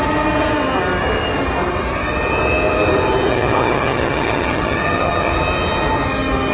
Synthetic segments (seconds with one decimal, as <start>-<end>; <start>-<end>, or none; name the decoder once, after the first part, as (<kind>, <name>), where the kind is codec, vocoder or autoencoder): 3.3-5.3 (vocoder, HiFi-GAN)